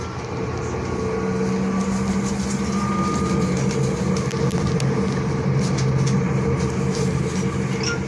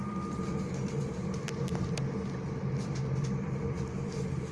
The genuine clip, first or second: first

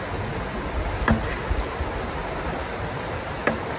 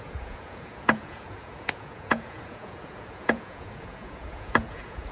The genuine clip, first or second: first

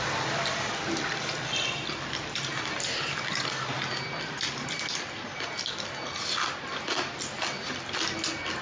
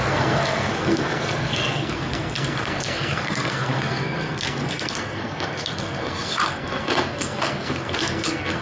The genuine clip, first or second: first